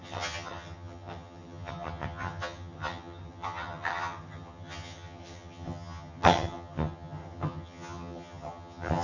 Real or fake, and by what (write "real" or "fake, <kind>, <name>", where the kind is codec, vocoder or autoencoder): fake, vocoder, HiFi-GAN